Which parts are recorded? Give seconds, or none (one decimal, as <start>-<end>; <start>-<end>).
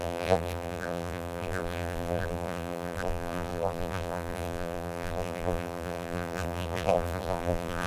none